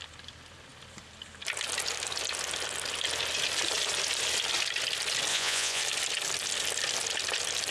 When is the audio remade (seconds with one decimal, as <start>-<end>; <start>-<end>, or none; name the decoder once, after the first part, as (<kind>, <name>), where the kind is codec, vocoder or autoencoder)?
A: 5.3-5.8 (vocoder, Vocos)